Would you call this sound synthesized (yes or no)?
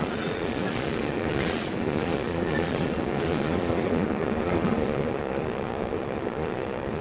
yes